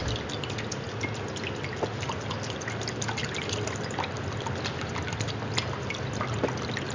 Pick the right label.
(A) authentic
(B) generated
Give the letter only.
A